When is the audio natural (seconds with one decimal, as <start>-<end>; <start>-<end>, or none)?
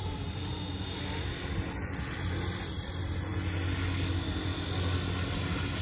1.0-5.8